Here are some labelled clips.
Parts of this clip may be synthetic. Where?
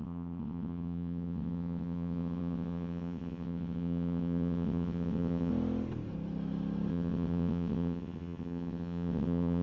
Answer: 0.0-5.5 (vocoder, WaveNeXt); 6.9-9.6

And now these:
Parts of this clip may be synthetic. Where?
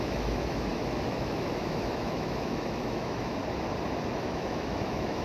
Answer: 0.0-3.4 (autoencoder, DAC-VAE); 4.1-5.2